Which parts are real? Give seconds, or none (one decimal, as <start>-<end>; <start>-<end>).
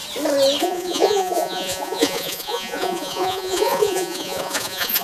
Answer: 0.0-0.6